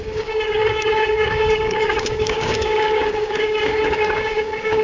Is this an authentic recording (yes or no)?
no